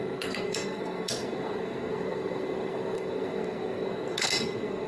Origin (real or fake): fake